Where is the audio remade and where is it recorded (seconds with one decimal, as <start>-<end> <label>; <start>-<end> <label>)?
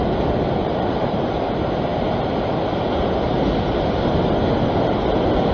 0.0-0.6 recorded; 0.6-1.2 remade; 1.2-5.5 recorded